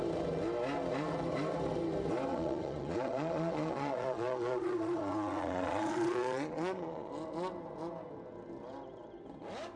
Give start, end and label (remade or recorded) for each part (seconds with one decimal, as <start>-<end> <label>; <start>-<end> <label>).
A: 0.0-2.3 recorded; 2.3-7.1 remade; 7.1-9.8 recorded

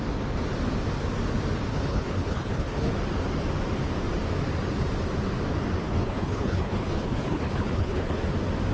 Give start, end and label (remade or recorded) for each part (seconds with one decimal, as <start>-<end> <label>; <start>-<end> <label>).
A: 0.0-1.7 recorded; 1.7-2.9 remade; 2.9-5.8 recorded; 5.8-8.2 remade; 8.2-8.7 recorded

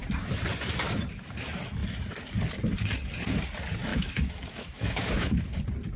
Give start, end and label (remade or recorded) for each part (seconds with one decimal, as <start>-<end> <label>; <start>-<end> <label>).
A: 0.0-3.9 recorded; 3.9-5.5 remade; 5.5-6.0 recorded